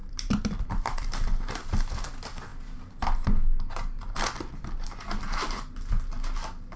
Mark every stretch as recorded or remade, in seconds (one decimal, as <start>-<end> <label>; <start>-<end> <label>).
0.0-1.1 remade; 1.1-6.8 recorded